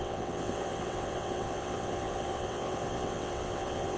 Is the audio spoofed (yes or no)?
yes